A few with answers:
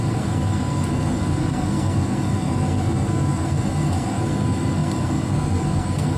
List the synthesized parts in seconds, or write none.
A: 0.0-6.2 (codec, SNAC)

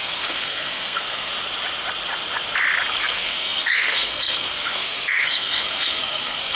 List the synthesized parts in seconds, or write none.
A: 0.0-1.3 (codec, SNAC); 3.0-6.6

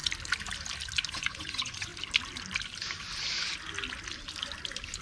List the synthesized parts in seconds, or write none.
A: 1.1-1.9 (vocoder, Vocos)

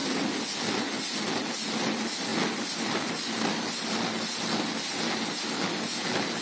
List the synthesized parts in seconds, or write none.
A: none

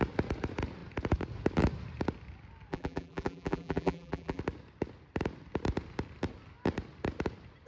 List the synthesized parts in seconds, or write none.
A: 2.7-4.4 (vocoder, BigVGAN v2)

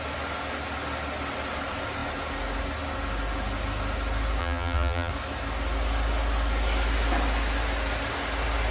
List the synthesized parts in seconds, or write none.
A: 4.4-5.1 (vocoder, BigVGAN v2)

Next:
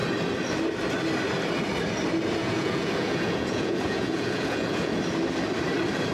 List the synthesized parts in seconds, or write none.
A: 2.4-4.9 (vocoder, Vocos)

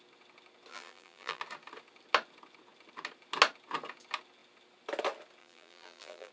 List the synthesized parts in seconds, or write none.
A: 0.7-1.4 (vocoder, BigVGAN v2); 5.4-6.3